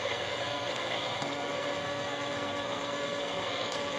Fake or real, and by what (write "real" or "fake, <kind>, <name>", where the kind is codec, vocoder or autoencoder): fake, codec, SNAC